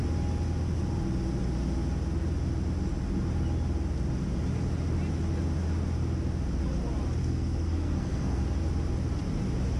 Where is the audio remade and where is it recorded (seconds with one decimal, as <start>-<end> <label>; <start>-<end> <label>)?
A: 0.0-7.2 recorded; 7.2-8.4 remade; 8.4-9.8 recorded